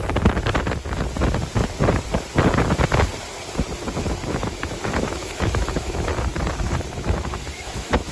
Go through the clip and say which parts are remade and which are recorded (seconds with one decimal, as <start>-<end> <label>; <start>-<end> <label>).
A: 0.0-4.3 recorded; 4.3-6.1 remade; 6.1-6.9 recorded; 6.9-8.1 remade